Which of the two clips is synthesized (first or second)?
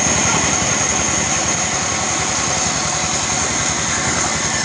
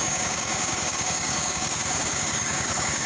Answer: second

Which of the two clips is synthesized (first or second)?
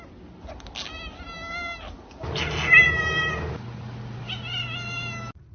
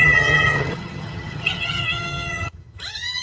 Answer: second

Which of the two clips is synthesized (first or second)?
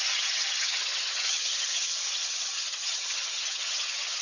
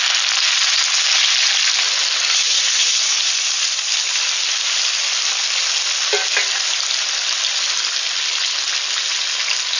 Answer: first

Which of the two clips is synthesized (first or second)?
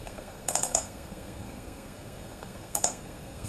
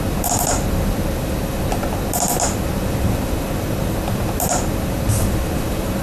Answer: first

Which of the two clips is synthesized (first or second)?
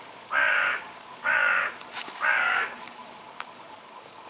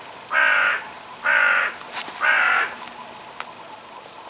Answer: first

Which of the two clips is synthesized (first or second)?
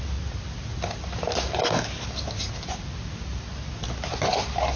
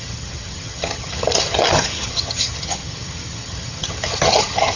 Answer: second